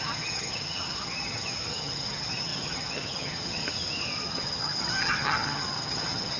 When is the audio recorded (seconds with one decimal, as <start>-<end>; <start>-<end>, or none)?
3.6-4.2